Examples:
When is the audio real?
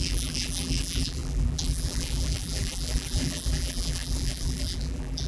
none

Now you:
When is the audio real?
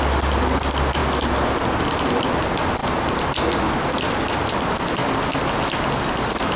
1.0-1.6; 2.8-4.5; 5.0-6.6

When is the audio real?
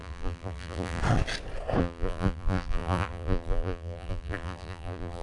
1.0-1.8